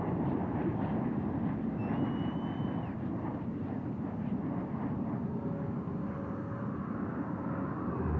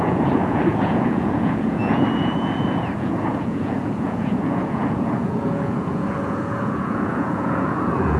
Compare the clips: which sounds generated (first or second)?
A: second